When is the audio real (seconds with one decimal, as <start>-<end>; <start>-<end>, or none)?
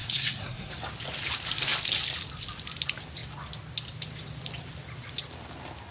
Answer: 0.7-5.9